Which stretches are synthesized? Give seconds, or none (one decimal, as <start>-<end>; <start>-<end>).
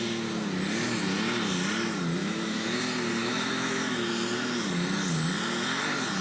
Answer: 2.2-2.8; 3.2-4.1